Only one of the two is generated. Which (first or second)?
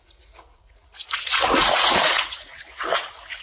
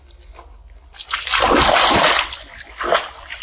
first